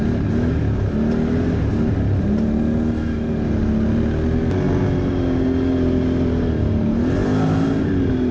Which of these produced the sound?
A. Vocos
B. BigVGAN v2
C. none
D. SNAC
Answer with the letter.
C